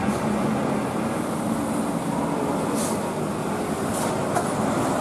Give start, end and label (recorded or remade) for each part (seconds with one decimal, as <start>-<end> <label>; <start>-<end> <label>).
0.0-0.5 remade; 0.5-5.0 recorded